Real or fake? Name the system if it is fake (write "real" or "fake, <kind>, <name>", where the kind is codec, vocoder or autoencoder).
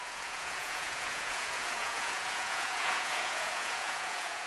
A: fake, vocoder, Vocos